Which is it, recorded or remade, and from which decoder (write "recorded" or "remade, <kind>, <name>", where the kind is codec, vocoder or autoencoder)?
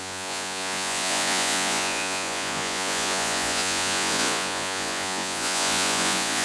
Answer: remade, vocoder, Vocos